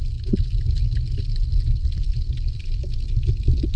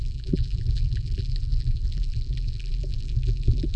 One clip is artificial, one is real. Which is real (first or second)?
first